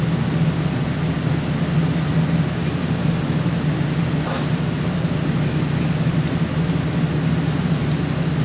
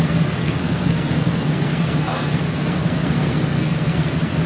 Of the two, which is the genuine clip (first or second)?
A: first